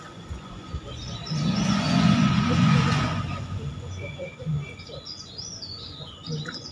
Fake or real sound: fake